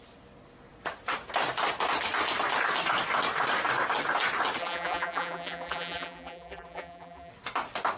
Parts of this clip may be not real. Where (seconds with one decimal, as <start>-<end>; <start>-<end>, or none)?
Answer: 4.6-7.3